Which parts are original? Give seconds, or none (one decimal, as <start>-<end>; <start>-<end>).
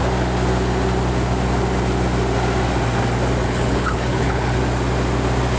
0.0-3.4; 4.6-5.6